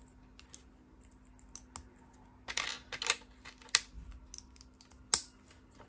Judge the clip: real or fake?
real